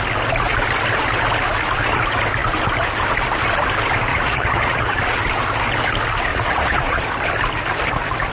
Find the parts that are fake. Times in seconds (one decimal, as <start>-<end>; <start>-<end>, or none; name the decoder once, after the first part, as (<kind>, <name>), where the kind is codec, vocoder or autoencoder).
4.1-5.2 (vocoder, Vocos); 6.3-7.0